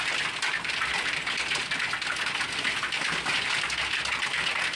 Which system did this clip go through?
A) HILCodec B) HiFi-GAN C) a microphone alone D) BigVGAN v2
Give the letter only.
C